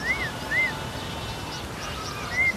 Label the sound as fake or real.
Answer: real